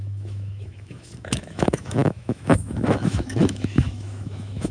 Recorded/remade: remade